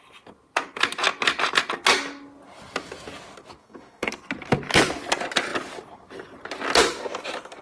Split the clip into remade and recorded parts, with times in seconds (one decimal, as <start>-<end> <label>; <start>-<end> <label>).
0.0-3.6 recorded; 3.6-4.1 remade; 4.1-7.6 recorded